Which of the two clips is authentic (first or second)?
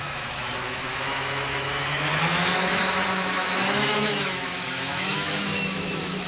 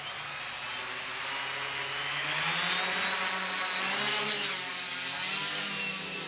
second